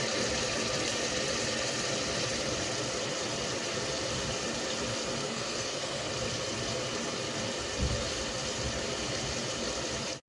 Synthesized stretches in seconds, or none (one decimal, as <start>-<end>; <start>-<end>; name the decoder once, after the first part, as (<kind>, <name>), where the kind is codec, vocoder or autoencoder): 5.2-6.1 (codec, SNAC)